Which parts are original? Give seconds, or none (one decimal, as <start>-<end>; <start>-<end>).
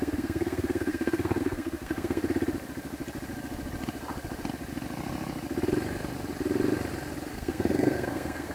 2.2-7.3